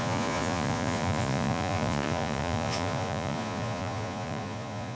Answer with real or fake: fake